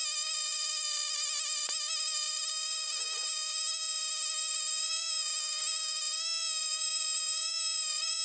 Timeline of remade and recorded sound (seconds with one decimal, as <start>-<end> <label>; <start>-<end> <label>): 0.0-3.5 remade; 3.5-4.8 recorded; 4.8-5.3 remade; 5.3-6.6 recorded; 6.6-8.2 remade